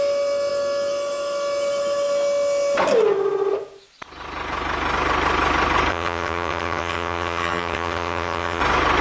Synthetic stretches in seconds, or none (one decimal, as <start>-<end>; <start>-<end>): 5.9-8.6